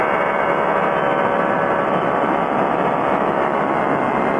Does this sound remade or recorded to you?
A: recorded